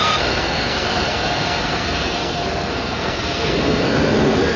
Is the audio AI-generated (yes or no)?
yes